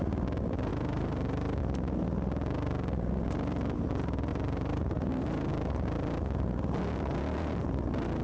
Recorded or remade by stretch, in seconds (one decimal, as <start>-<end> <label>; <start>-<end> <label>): 0.0-0.7 recorded; 0.7-1.6 remade; 1.6-4.3 recorded; 4.3-5.5 remade; 5.5-8.2 recorded